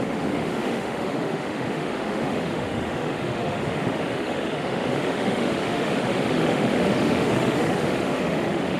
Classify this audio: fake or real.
fake